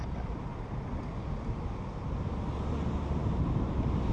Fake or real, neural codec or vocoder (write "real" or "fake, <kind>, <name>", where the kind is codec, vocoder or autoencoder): real